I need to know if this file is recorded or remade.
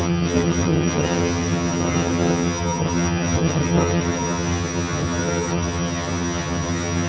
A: remade